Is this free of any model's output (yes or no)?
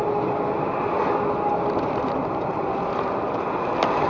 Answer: yes